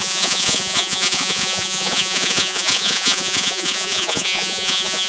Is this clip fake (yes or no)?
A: yes